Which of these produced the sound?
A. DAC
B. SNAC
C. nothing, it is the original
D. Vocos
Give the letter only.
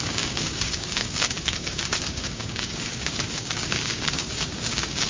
A